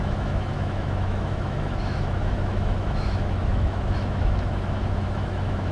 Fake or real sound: fake